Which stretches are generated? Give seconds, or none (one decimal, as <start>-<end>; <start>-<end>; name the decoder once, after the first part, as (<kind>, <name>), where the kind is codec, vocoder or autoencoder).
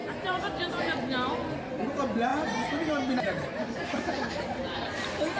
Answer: none